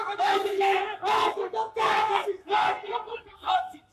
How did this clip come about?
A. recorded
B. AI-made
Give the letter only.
B